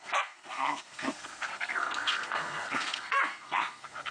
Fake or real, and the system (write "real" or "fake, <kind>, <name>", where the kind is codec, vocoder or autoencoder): fake, codec, SNAC